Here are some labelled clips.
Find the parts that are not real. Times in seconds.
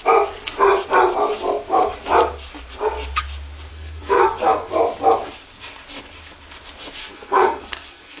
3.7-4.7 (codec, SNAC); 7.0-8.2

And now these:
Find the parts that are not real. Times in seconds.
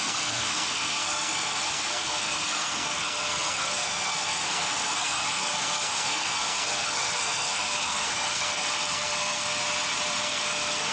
0.0-9.6 (codec, SNAC); 10.2-10.9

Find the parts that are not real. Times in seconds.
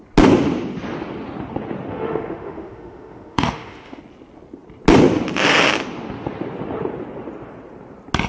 1.9-4.0 (autoencoder, DAC-VAE)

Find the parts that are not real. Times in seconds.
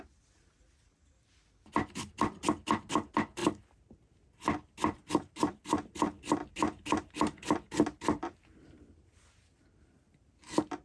none